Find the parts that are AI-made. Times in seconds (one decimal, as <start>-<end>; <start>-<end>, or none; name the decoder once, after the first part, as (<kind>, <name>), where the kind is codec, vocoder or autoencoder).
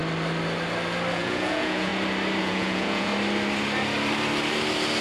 1.1-1.9 (vocoder, Vocos); 2.4-3.1